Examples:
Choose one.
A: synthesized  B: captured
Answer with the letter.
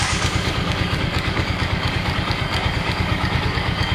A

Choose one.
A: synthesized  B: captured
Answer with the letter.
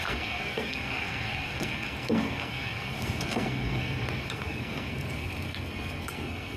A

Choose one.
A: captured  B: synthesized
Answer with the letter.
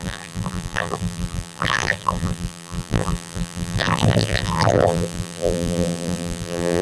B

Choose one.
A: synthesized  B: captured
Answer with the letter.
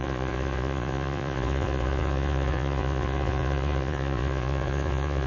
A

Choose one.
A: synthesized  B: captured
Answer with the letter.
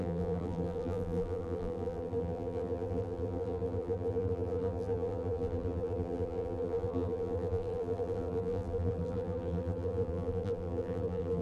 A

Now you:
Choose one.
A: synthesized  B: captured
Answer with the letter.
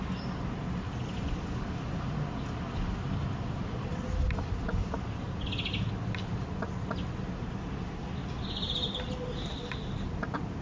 B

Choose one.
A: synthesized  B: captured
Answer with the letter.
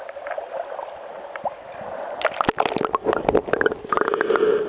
B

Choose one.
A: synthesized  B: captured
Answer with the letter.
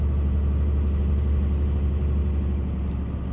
B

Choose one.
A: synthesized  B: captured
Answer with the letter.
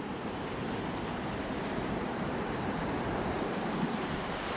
A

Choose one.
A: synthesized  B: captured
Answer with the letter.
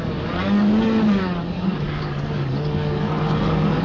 A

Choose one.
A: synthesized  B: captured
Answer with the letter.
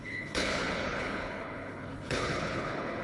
A